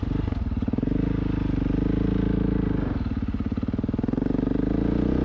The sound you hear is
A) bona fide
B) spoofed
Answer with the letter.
A